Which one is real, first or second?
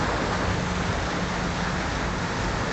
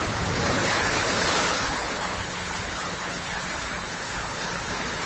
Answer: first